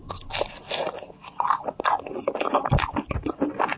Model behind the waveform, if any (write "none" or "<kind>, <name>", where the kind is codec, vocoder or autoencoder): none